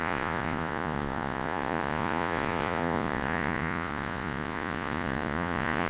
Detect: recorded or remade remade